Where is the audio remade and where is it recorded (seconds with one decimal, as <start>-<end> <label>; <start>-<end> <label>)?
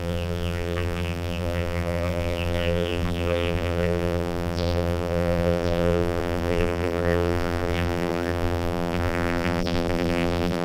0.0-10.6 remade